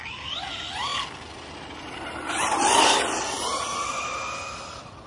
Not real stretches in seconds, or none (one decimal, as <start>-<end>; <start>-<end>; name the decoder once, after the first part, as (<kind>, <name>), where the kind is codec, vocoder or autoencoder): none